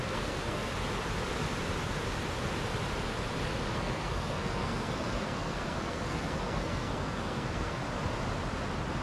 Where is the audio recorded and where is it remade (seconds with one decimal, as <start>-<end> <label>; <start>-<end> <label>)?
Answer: 0.0-0.7 remade; 0.7-3.7 recorded; 3.7-7.8 remade; 7.8-9.0 recorded